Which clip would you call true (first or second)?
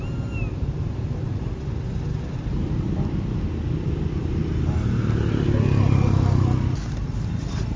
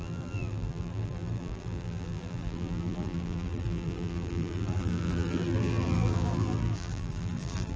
first